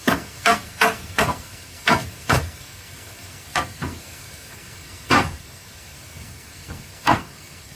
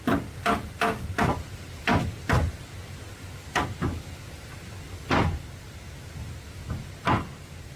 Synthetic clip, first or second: first